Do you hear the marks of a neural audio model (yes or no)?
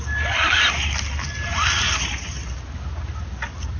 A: no